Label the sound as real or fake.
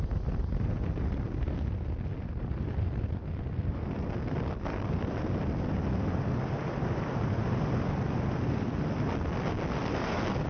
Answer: real